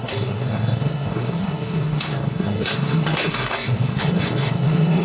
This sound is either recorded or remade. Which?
remade